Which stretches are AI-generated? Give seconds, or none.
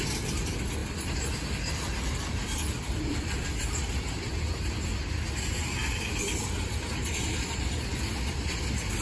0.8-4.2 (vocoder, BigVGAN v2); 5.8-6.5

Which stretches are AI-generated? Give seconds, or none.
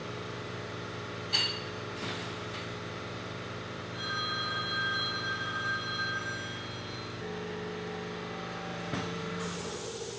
0.0-3.8 (vocoder, BigVGAN v2); 8.7-9.3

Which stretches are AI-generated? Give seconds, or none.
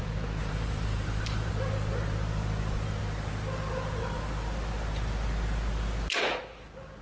0.4-1.5 (vocoder, BigVGAN v2)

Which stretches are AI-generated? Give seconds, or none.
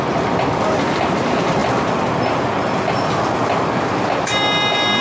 none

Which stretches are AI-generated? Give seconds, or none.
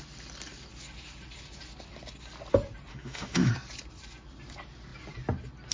2.9-3.5 (autoencoder, DAC-VAE)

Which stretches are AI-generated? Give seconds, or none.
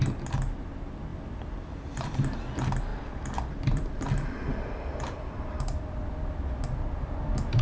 1.1-2.1 (vocoder, BigVGAN v2); 2.9-6.2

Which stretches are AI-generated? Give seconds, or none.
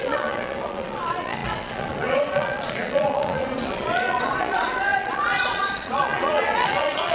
0.0-7.1 (vocoder, Vocos)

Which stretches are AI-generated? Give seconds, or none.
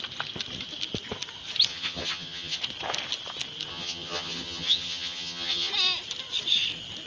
1.7-2.6 (vocoder, HiFi-GAN); 3.7-5.7